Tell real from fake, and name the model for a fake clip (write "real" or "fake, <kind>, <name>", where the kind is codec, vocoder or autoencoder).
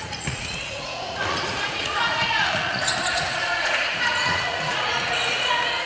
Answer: fake, vocoder, Vocos